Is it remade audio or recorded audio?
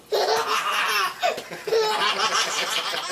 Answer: recorded